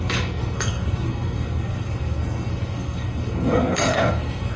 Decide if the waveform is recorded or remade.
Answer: remade